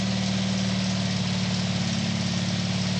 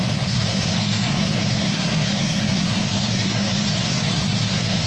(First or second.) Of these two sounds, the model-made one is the second